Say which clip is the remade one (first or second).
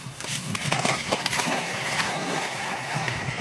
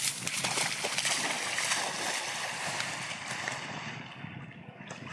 first